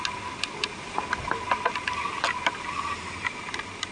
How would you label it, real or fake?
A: real